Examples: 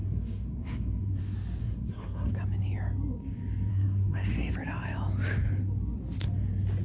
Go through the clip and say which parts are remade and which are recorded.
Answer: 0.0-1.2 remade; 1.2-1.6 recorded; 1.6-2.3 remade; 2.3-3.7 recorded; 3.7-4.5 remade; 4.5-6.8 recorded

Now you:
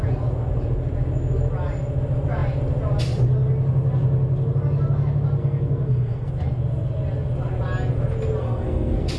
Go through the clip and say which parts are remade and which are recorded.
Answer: 0.0-5.4 recorded; 5.4-6.3 remade; 6.3-8.4 recorded; 8.4-9.2 remade

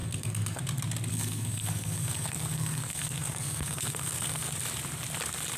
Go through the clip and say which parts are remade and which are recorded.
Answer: 0.0-0.6 remade; 0.6-1.1 recorded; 1.1-4.5 remade; 4.5-5.6 recorded

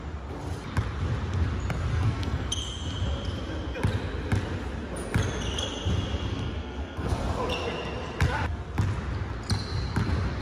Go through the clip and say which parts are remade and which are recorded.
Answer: 0.0-1.9 recorded; 1.9-2.5 remade; 2.5-6.3 recorded; 6.3-7.2 remade; 7.2-10.4 recorded

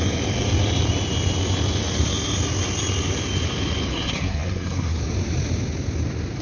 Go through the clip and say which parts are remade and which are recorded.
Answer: 0.0-3.9 recorded; 3.9-5.0 remade; 5.0-6.4 recorded

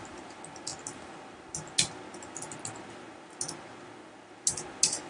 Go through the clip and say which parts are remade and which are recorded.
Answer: 0.0-5.1 recorded

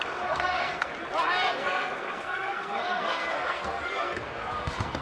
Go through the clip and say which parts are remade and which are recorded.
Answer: 0.0-0.9 remade; 0.9-1.5 recorded; 1.5-5.0 remade

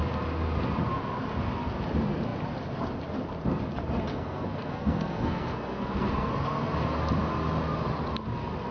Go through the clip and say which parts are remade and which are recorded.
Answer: 0.0-4.1 recorded; 4.1-6.3 remade; 6.3-8.7 recorded